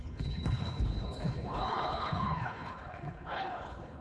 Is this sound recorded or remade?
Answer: remade